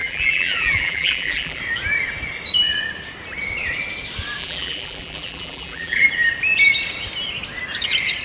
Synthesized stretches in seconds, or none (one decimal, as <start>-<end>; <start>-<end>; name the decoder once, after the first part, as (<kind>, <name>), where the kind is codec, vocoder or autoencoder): 0.0-1.6 (vocoder, BigVGAN v2); 4.4-6.1